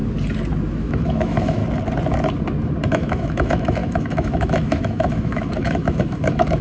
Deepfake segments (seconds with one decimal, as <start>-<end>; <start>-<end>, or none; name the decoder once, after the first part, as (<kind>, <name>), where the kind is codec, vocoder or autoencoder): 0.8-1.6 (autoencoder, DAC-VAE); 2.9-6.6